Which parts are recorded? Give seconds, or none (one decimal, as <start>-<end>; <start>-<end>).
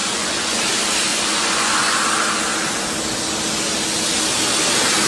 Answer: 0.6-1.1; 2.0-5.1